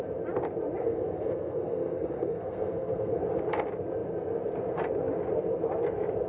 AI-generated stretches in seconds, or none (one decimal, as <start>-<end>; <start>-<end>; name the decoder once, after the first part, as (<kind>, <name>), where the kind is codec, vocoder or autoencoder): 0.8-3.2 (codec, SNAC)